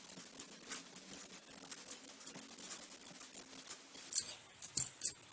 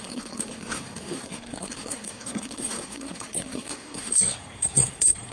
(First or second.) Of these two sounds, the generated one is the second